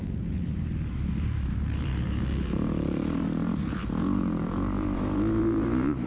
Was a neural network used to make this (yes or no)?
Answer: yes